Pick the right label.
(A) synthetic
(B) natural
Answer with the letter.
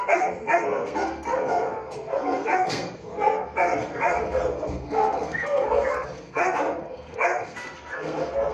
A